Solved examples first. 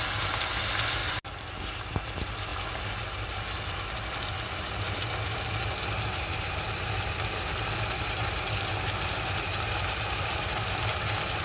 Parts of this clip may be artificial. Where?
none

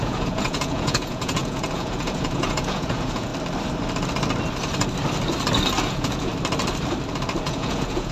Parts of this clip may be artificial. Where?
0.0-3.3 (vocoder, Vocos); 5.8-6.3; 7.4-8.1

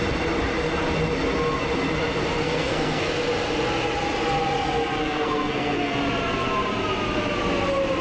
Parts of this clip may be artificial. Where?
2.3-3.1 (codec, SNAC); 5.0-5.9

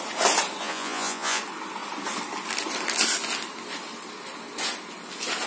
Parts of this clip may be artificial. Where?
0.6-1.4 (vocoder, Vocos)

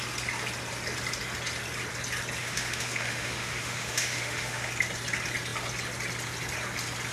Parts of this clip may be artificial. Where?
2.4-4.7 (autoencoder, DAC-VAE)

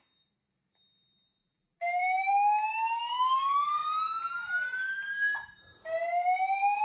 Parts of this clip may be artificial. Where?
1.4-2.3 (vocoder, BigVGAN v2)